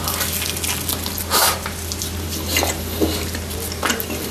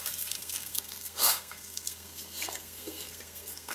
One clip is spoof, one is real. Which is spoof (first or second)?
second